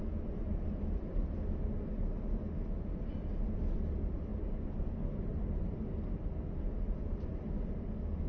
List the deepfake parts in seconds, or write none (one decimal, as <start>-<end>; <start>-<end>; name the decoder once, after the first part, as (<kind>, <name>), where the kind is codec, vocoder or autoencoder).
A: none

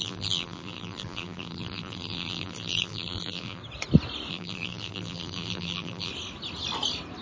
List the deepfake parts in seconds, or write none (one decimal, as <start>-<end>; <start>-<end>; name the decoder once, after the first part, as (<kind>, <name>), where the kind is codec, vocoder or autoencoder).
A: 0.0-3.6 (vocoder, BigVGAN v2); 4.3-6.1

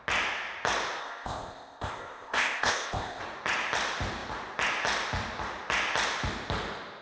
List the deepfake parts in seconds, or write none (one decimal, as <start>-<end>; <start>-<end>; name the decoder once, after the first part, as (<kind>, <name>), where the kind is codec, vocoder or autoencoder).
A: 1.0-3.2 (codec, ZipCodec)

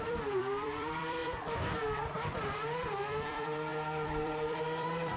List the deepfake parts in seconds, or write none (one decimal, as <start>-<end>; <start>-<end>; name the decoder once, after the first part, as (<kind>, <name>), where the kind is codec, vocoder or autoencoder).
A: 0.0-5.2 (vocoder, BigVGAN v2)

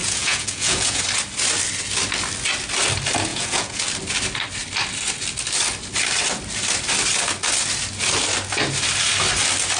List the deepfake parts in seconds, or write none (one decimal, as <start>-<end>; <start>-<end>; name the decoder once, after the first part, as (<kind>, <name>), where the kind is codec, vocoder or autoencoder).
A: 0.0-1.0 (vocoder, Vocos); 3.3-3.8